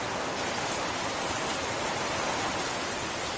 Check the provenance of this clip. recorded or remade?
recorded